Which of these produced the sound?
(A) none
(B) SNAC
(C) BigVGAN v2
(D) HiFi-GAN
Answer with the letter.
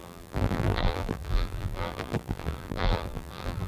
C